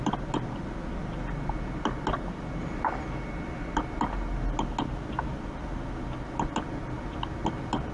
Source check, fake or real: real